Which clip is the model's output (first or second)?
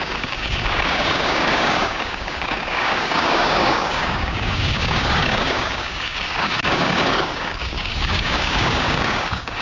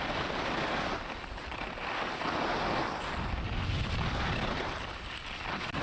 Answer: first